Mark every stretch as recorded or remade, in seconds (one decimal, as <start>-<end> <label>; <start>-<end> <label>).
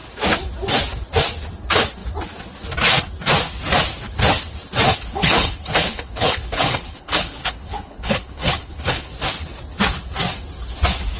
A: 0.0-4.9 recorded; 4.9-9.1 remade; 9.1-11.2 recorded